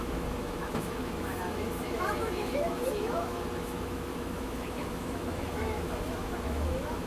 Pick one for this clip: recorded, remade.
remade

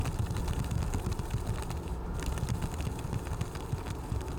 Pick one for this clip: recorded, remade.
recorded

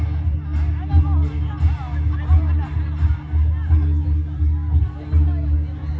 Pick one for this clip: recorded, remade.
recorded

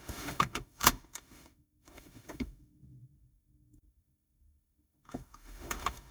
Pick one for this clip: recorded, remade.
remade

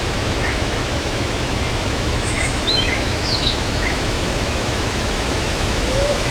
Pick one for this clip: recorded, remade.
remade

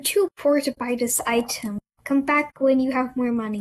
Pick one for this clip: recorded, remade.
remade